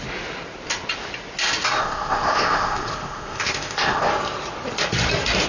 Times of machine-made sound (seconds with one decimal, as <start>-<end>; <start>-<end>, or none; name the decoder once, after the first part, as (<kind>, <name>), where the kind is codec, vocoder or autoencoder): 1.8-4.1 (codec, ZipCodec)